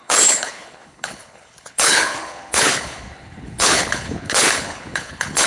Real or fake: fake